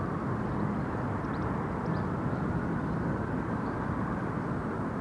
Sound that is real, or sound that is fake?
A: real